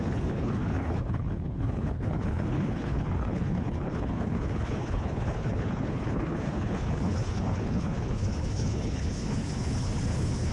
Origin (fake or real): fake